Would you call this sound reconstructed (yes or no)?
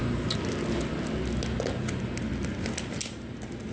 no